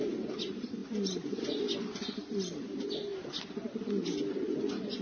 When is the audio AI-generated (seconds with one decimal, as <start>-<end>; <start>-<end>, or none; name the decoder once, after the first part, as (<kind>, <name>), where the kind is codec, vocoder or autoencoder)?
none